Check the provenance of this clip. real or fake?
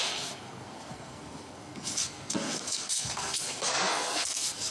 fake